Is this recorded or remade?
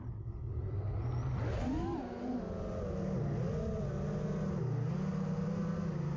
recorded